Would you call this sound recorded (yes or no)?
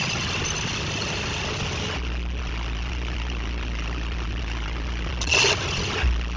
yes